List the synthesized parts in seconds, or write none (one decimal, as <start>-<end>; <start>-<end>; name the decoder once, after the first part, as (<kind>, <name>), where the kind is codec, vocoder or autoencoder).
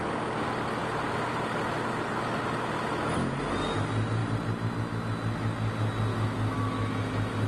6.1-6.9 (autoencoder, DAC-VAE)